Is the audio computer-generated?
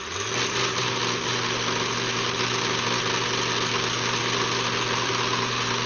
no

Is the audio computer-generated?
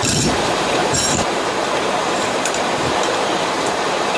yes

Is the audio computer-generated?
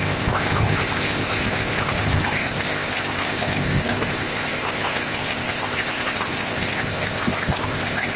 yes